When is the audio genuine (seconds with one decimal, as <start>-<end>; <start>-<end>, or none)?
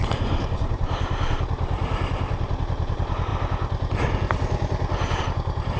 1.8-2.6; 3.3-5.2